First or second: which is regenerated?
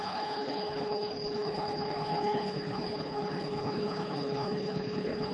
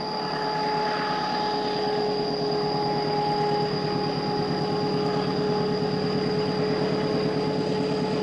first